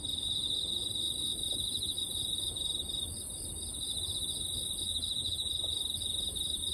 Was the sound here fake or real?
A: real